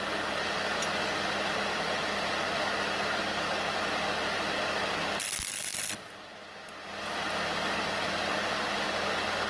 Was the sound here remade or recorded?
recorded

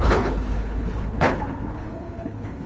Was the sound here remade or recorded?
remade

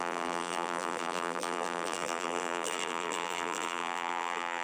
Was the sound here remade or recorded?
remade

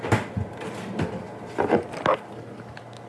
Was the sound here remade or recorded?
recorded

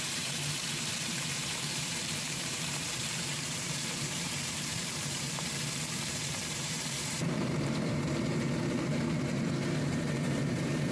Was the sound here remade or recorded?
remade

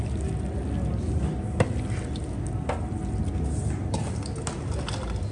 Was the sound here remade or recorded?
recorded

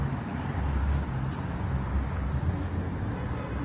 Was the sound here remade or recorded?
recorded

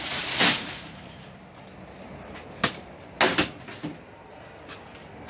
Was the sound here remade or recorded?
recorded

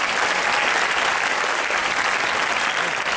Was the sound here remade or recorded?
recorded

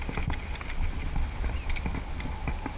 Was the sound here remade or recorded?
recorded